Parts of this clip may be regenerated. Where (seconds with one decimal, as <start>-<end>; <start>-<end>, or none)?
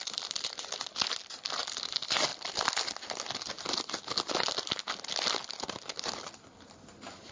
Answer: none